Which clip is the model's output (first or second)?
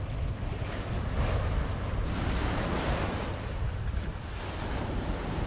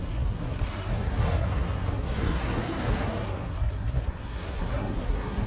second